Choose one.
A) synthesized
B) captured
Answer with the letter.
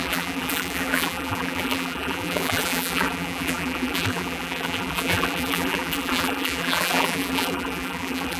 A